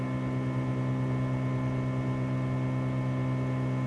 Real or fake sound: real